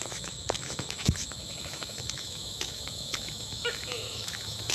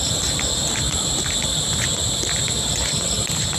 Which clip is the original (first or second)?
second